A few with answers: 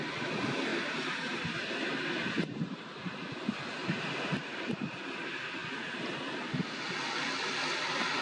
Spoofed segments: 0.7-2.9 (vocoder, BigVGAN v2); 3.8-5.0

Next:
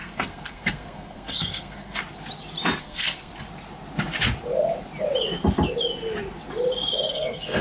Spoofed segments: 0.0-2.0 (codec, SNAC); 2.8-3.3; 7.1-7.6

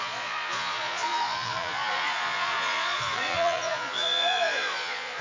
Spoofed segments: 0.0-5.2 (vocoder, Vocos)

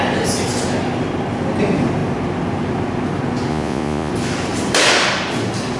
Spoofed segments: 3.5-4.1 (vocoder, Vocos)

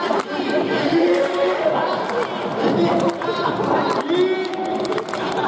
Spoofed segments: 0.8-1.7 (autoencoder, DAC-VAE)